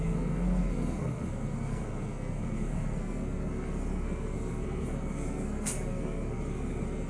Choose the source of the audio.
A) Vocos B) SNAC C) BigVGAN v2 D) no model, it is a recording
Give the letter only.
B